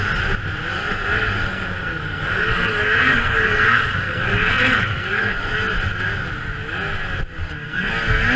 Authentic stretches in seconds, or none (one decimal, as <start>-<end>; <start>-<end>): 0.0-0.7; 5.7-7.4; 7.9-8.4